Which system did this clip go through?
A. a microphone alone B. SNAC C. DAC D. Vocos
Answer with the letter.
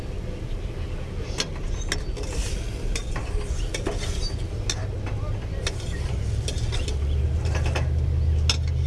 A